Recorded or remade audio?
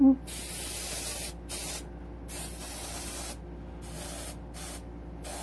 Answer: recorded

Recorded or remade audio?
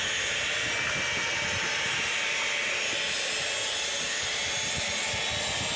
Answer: recorded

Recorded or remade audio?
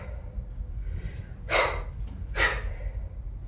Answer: recorded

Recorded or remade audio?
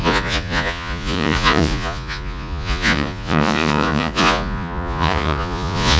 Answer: remade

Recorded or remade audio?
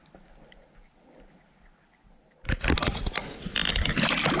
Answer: recorded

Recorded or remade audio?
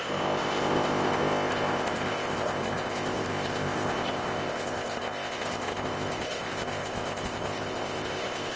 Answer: remade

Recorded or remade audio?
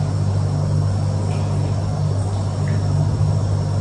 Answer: recorded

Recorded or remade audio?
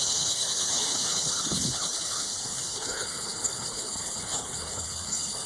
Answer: remade